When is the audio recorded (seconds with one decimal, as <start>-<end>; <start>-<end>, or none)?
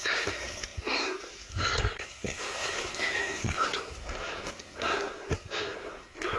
none